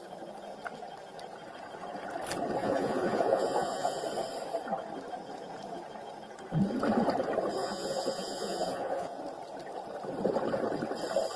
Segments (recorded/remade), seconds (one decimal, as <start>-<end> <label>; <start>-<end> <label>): 0.0-2.6 recorded; 2.6-4.0 remade; 4.0-7.6 recorded; 7.6-9.2 remade; 9.2-11.4 recorded